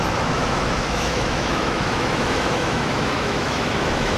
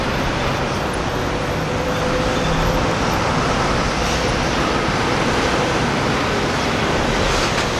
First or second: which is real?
second